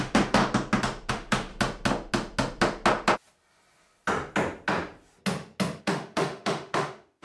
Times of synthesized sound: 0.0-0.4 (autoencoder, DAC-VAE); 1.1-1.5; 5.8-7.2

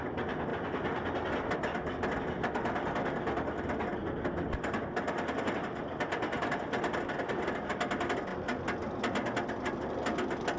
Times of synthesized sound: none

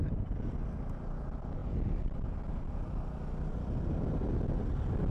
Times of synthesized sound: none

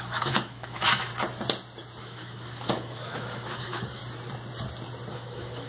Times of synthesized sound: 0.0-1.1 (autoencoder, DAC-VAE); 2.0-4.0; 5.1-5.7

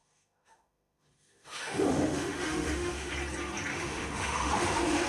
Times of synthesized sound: 0.0-3.1 (autoencoder, DAC-VAE); 3.7-5.1

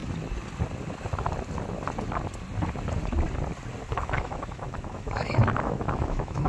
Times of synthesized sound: 3.9-6.5 (autoencoder, DAC-VAE)

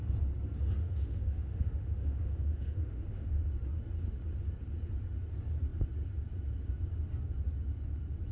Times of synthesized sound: 0.8-3.4 (autoencoder, DAC-VAE)